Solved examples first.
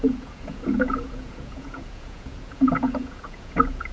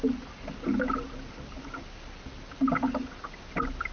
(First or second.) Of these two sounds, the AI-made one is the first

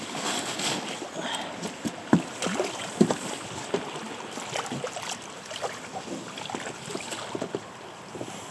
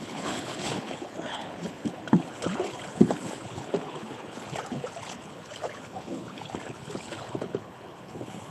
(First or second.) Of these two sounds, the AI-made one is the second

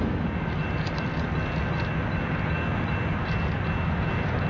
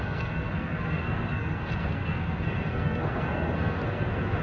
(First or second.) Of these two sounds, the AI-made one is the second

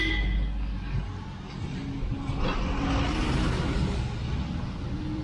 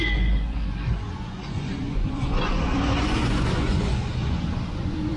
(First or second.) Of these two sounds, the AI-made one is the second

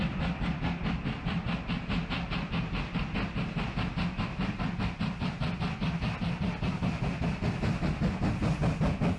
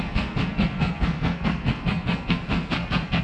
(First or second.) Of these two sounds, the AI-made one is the second